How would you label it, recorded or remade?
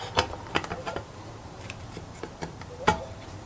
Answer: remade